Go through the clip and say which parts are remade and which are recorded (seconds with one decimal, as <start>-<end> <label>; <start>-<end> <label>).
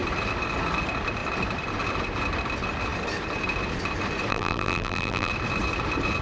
0.0-4.3 recorded; 4.3-5.3 remade; 5.3-6.2 recorded